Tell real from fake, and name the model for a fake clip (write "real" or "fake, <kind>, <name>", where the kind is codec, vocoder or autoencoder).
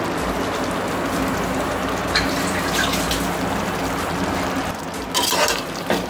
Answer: real